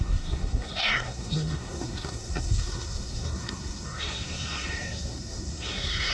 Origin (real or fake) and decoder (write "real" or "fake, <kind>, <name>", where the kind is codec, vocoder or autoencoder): fake, codec, SNAC